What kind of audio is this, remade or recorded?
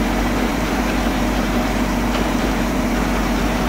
remade